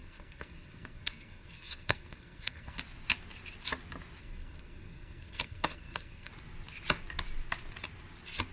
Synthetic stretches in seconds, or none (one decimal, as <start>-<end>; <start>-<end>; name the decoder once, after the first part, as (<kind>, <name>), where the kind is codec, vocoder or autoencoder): 0.0-2.8 (codec, SNAC); 4.2-6.3